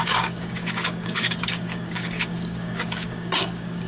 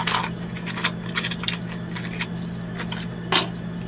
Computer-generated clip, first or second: first